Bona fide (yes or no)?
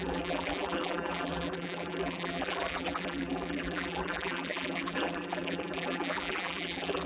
no